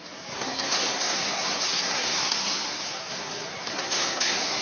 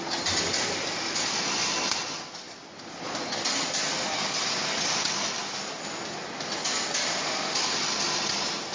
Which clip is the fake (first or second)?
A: first